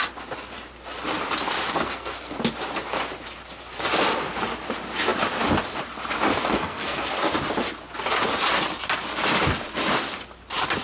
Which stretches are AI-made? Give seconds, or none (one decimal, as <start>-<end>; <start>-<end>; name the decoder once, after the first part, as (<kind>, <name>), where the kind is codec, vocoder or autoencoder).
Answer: 1.7-2.4 (codec, SNAC); 6.4-7.1